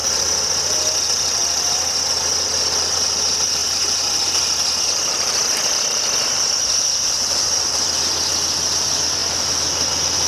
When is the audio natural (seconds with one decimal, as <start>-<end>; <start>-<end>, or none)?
0.5-3.6; 7.9-10.3